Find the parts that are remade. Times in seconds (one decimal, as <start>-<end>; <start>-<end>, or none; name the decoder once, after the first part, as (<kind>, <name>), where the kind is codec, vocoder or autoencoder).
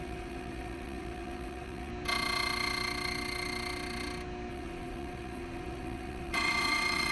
0.0-1.9 (vocoder, WaveNeXt); 4.5-7.1